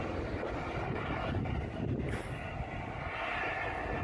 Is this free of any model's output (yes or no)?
yes